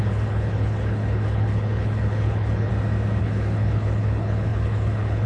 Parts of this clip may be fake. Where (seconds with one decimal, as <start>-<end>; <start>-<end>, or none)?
0.0-2.7; 3.2-5.3